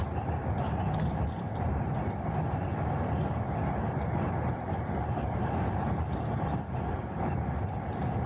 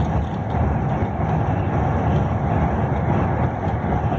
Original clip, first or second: second